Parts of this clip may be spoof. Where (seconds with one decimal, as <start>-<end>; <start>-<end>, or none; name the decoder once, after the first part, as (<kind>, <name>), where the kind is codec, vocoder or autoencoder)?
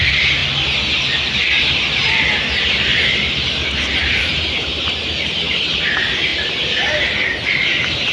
none